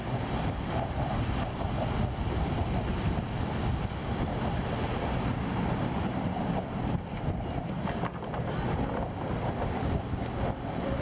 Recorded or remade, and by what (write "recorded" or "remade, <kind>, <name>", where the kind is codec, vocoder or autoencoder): remade, vocoder, BigVGAN v2